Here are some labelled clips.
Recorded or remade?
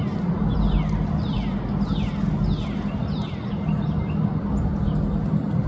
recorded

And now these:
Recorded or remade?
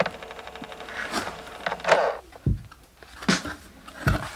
recorded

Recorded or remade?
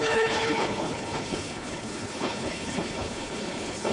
remade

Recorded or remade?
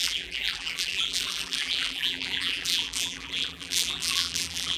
remade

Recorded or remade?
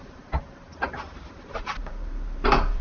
remade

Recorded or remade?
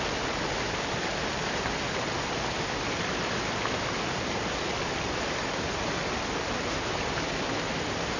recorded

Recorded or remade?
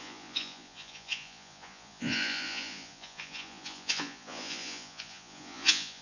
remade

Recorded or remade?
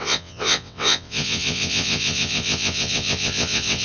remade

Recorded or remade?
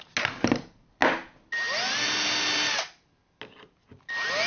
recorded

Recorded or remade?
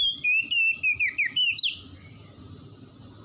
recorded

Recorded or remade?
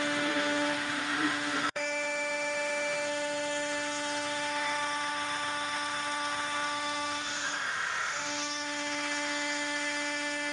remade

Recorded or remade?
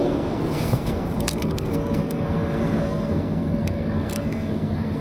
remade